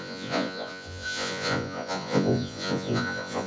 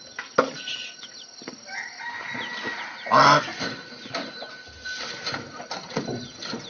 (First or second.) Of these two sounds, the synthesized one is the first